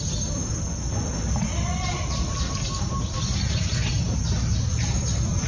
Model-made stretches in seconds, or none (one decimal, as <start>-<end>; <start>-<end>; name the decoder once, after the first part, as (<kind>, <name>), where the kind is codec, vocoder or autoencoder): none